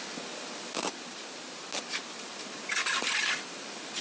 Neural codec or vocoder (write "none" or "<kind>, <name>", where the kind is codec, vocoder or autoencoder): none